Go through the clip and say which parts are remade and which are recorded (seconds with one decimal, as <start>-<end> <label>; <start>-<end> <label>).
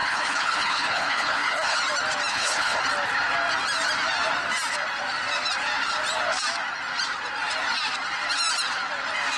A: 0.0-1.8 remade; 1.8-2.3 recorded; 2.3-2.8 remade; 2.8-9.4 recorded